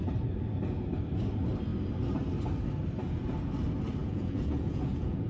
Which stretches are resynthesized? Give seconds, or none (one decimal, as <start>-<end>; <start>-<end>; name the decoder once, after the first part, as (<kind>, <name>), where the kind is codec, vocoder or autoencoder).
4.0-5.3 (vocoder, Vocos)

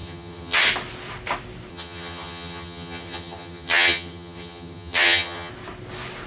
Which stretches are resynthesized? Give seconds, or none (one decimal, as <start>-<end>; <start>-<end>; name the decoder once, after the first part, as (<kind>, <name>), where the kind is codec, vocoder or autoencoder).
0.0-0.6 (vocoder, HiFi-GAN); 1.7-5.5

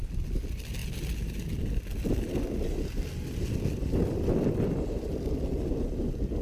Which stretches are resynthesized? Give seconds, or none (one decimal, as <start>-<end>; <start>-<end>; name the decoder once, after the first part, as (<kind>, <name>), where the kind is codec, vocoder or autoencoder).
none

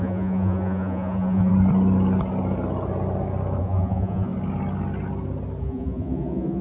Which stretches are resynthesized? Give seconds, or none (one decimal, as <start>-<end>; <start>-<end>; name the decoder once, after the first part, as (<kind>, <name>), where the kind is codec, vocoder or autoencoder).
0.0-1.5 (vocoder, Vocos); 3.6-4.3; 5.6-6.6

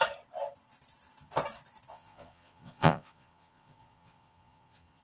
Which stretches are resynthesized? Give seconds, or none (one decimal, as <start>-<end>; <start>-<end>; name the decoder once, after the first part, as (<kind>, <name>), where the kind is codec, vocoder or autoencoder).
1.9-5.0 (vocoder, Vocos)

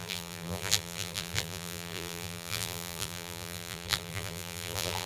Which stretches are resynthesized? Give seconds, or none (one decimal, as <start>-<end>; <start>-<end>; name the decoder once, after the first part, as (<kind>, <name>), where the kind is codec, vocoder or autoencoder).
0.0-5.1 (vocoder, BigVGAN v2)

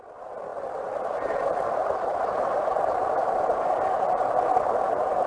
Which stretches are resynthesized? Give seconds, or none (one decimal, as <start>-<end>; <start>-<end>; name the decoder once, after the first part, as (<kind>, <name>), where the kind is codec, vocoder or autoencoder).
0.5-1.0 (vocoder, BigVGAN v2); 1.8-3.6